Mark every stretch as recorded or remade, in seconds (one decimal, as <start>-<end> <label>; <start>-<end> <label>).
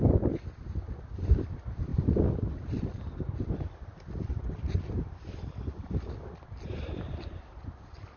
0.0-8.2 recorded